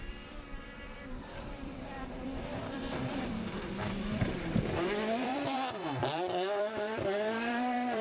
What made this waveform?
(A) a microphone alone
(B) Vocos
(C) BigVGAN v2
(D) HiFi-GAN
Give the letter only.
C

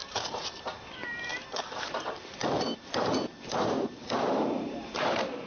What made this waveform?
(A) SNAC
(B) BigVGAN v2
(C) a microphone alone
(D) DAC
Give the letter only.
B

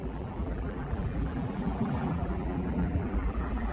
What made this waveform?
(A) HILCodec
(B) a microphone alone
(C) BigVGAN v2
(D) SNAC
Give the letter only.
C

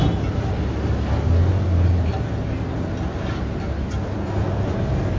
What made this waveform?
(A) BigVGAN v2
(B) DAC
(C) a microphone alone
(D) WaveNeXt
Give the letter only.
C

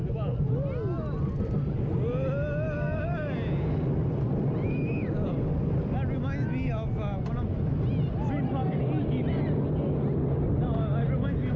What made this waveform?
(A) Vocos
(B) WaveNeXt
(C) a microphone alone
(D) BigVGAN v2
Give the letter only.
C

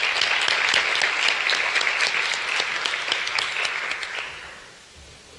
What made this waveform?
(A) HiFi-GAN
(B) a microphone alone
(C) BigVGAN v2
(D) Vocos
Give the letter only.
B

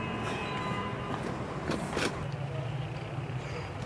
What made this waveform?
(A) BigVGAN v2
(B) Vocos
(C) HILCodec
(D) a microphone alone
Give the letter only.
D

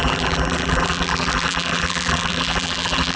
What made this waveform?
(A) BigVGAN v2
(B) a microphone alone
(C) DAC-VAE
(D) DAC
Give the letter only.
A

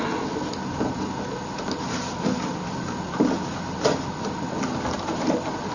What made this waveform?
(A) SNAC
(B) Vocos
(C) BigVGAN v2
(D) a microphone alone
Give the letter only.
D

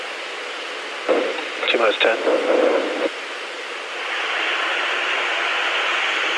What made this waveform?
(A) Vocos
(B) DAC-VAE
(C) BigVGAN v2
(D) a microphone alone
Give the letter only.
D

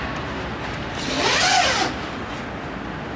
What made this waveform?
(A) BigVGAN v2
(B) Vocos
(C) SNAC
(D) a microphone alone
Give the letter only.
D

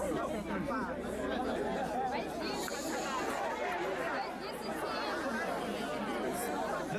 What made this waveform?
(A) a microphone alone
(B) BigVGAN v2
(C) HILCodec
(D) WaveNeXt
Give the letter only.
A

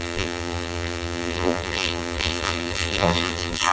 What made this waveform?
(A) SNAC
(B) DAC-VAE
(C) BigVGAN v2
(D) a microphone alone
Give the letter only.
C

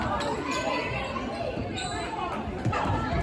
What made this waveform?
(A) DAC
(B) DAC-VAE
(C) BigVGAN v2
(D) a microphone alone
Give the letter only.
C